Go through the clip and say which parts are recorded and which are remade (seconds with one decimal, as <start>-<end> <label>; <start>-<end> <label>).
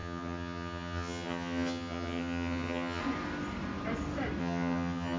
0.0-3.0 remade; 3.0-4.4 recorded; 4.4-5.2 remade